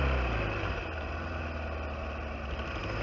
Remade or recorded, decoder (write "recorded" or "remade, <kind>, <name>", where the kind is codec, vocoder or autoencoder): recorded